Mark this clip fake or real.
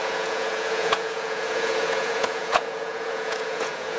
fake